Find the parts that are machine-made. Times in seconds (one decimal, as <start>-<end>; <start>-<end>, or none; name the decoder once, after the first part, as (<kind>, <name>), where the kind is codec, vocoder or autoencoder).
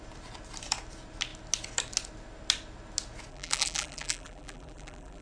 3.3-5.2 (vocoder, BigVGAN v2)